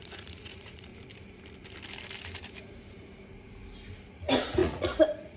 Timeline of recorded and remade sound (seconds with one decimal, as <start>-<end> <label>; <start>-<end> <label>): 0.0-0.9 remade; 0.9-4.1 recorded; 4.1-5.4 remade